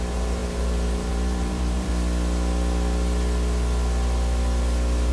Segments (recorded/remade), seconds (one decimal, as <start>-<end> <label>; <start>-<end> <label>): 0.0-1.9 remade; 1.9-5.1 recorded